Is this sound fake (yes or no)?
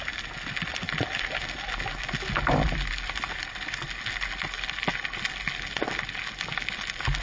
no